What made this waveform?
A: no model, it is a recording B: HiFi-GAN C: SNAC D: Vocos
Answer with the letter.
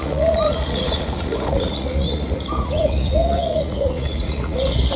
D